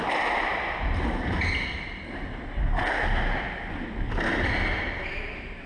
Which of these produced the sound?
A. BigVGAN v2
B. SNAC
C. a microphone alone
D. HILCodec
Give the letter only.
C